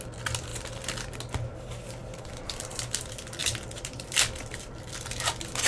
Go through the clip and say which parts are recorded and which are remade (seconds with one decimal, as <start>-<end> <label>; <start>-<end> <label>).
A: 0.0-2.0 recorded; 2.0-2.7 remade; 2.7-3.4 recorded; 3.4-5.1 remade; 5.1-5.7 recorded